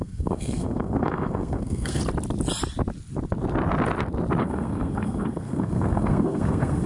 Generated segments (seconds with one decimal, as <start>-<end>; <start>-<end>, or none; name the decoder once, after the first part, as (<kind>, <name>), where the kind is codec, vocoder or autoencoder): 0.0-2.0 (codec, SNAC); 4.4-6.9